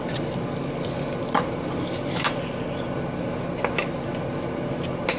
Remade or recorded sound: recorded